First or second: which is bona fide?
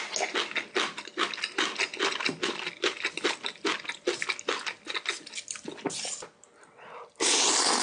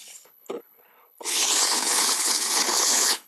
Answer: first